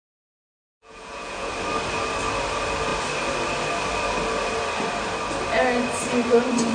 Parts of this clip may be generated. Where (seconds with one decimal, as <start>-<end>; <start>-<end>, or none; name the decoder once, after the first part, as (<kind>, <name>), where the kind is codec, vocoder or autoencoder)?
0.0-1.5 (vocoder, Vocos)